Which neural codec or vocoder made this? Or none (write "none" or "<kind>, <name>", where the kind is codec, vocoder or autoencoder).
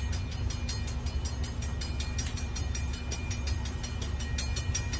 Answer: none